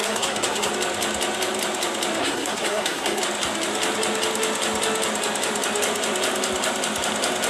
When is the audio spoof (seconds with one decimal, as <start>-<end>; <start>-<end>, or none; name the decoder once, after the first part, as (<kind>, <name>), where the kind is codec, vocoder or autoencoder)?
0.0-0.7 (codec, SNAC); 2.2-3.2

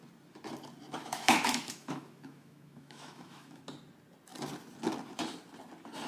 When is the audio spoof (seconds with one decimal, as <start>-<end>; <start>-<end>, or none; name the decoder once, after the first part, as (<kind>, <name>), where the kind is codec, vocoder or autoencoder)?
1.0-3.6 (autoencoder, DAC-VAE)

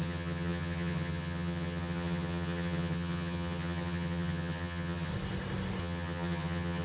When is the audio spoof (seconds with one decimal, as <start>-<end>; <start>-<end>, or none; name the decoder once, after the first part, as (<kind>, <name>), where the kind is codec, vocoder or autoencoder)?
0.0-5.1 (vocoder, HiFi-GAN); 5.8-6.8